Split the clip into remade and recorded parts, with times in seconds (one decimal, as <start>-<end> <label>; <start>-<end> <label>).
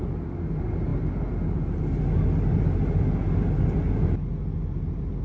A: 0.0-5.2 recorded